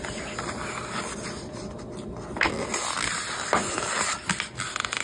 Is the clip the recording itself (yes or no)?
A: yes